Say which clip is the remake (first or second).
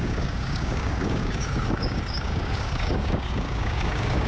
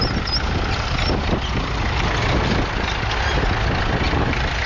first